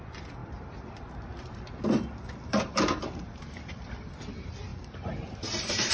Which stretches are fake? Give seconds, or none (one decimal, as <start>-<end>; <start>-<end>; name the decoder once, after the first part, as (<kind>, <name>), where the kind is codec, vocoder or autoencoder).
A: 0.4-3.9 (vocoder, BigVGAN v2); 4.7-5.9

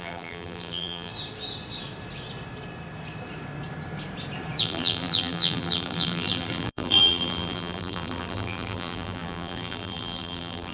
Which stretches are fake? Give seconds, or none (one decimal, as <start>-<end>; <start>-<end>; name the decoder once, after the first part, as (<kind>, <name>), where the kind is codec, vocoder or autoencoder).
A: 0.0-1.1 (vocoder, BigVGAN v2); 4.6-10.7

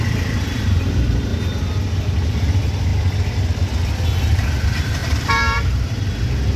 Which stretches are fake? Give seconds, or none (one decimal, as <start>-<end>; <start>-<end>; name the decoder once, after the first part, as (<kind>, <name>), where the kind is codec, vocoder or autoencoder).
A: 0.0-1.3 (vocoder, BigVGAN v2); 1.8-2.9; 4.2-6.6

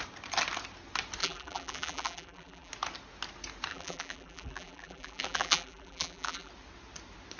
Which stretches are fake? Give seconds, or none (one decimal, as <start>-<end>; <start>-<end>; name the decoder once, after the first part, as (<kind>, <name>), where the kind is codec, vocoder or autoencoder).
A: 1.2-2.7 (vocoder, BigVGAN v2); 3.7-6.5